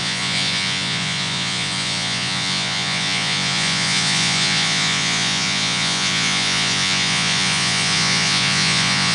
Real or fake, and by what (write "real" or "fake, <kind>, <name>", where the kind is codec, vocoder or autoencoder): fake, vocoder, Vocos